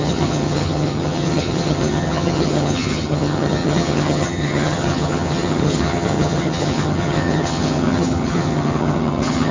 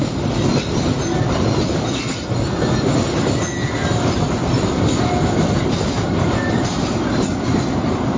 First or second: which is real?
second